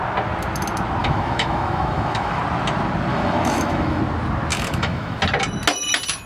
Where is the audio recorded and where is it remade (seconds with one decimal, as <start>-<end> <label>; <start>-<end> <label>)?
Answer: 0.0-1.0 recorded; 1.0-2.4 remade; 2.4-3.1 recorded; 3.1-4.0 remade; 4.0-4.5 recorded; 4.5-5.2 remade; 5.2-6.3 recorded